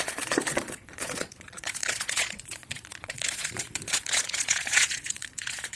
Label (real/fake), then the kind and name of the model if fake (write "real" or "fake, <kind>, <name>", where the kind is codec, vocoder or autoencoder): fake, vocoder, Vocos